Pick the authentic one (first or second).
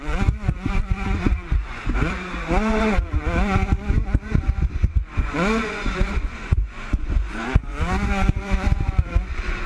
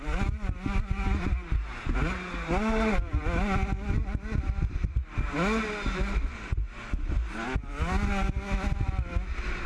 second